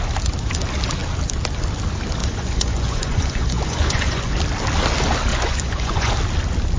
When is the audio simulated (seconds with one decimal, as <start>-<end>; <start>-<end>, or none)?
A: 2.2-4.4; 5.3-6.1